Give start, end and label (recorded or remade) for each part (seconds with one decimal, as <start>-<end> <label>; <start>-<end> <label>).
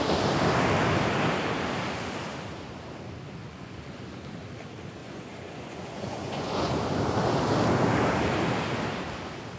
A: 0.0-3.4 recorded; 3.4-4.2 remade; 4.2-5.0 recorded; 5.0-6.7 remade; 6.7-9.6 recorded